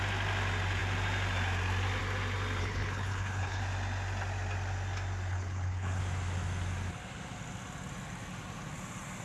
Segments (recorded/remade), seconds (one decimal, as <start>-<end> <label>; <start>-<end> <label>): 0.0-2.6 recorded; 2.6-3.6 remade; 3.6-5.3 recorded; 5.3-6.0 remade; 6.0-9.2 recorded